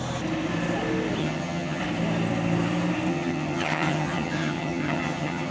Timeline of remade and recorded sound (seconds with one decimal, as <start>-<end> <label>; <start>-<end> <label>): 0.0-1.2 recorded; 1.2-1.8 remade; 1.8-3.1 recorded; 3.1-5.5 remade